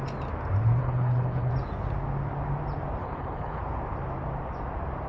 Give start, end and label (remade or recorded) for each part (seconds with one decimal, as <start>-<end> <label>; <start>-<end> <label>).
0.0-0.8 recorded; 0.8-1.5 remade; 1.5-3.0 recorded; 3.0-3.6 remade; 3.6-5.1 recorded